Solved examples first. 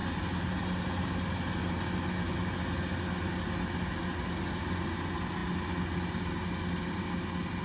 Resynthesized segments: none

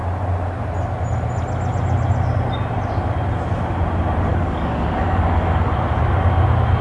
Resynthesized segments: 4.3-5.7

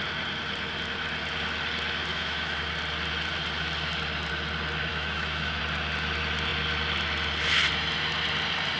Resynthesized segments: 2.1-2.7; 4.9-5.6

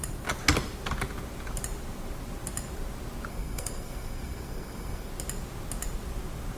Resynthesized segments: 3.3-5.1